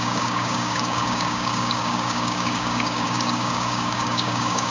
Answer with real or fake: fake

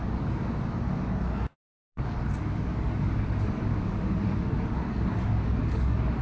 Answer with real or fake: fake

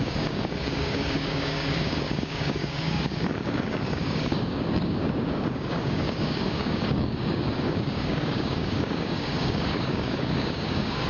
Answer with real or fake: fake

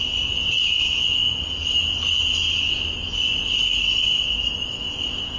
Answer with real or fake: real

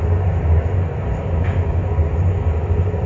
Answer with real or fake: real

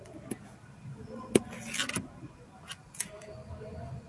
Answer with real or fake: real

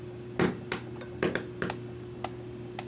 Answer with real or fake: real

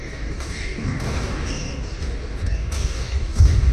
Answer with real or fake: fake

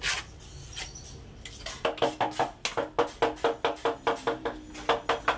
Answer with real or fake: real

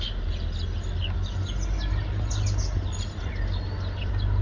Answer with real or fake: real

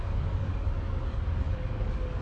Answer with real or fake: fake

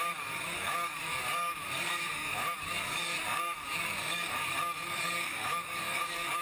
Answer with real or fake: fake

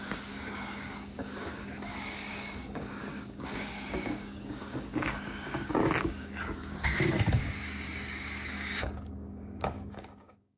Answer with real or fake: fake